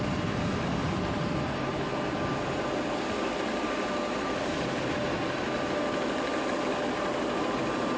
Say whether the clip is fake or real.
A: real